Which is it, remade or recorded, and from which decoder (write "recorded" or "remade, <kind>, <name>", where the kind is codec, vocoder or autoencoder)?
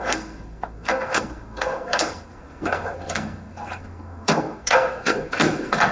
remade, codec, SNAC